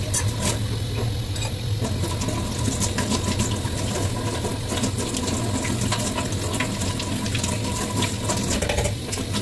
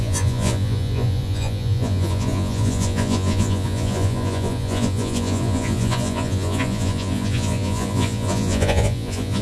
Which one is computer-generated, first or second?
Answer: second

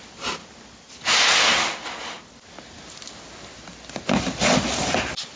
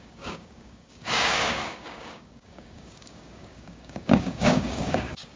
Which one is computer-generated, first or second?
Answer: second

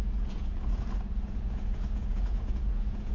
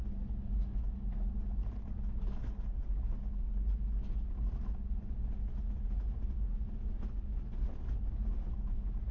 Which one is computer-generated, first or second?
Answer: first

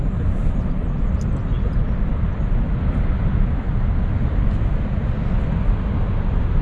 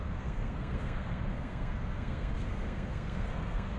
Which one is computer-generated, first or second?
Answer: second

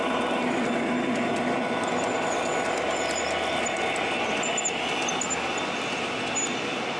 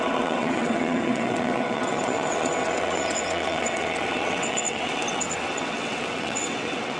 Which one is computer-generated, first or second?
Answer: second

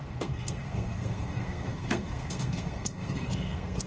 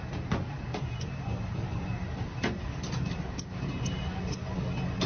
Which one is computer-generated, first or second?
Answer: first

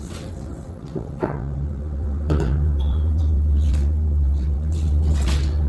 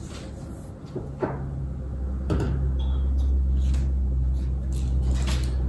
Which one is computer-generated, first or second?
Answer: first